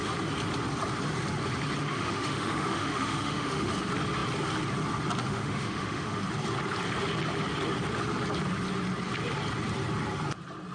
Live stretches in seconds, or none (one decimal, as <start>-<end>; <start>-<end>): 0.0-1.9; 3.7-5.2; 6.2-10.7